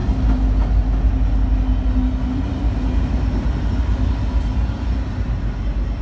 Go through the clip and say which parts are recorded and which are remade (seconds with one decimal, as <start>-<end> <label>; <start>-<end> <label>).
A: 0.0-6.0 recorded